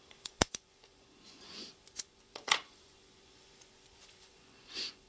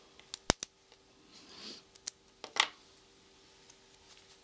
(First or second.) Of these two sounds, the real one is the second